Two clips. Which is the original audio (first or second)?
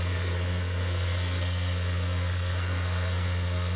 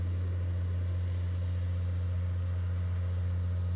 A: second